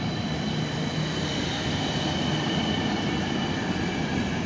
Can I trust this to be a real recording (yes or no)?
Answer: yes